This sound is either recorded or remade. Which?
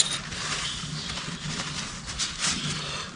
recorded